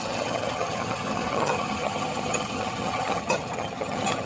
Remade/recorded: remade